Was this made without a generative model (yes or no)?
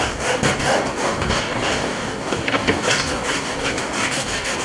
no